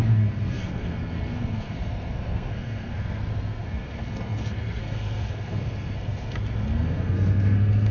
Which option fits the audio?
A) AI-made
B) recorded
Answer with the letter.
A